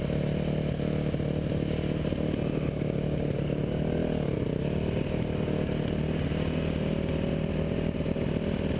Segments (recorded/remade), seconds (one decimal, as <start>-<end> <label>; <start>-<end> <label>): 0.0-8.8 recorded